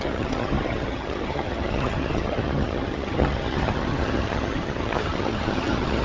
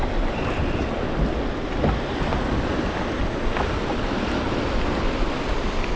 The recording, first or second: second